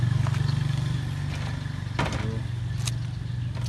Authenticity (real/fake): real